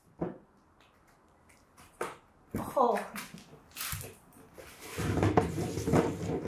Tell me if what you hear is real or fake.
real